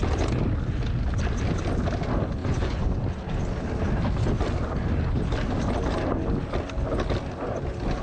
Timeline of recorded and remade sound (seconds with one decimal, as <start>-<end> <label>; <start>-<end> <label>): 0.0-2.4 recorded; 2.4-3.0 remade; 3.0-8.0 recorded